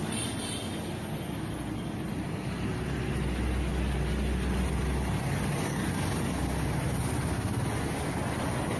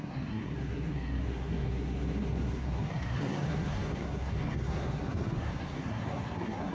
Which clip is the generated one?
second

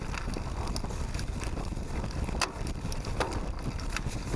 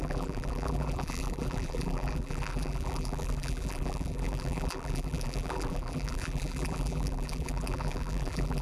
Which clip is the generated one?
second